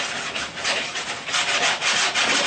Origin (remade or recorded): recorded